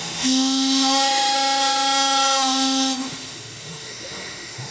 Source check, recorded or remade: remade